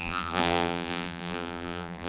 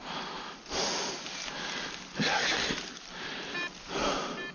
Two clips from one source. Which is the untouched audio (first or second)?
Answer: second